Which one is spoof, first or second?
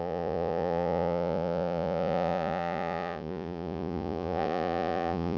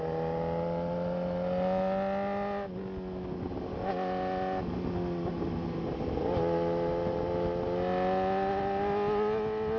first